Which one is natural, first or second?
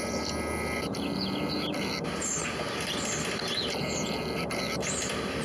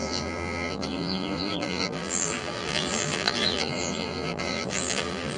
first